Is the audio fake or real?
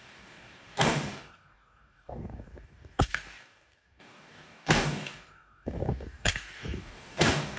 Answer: fake